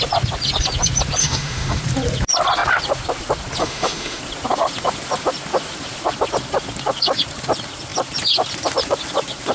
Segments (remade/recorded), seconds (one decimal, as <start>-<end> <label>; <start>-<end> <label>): 0.0-1.2 recorded; 1.2-1.8 remade; 1.8-3.6 recorded; 3.6-4.2 remade; 4.2-9.5 recorded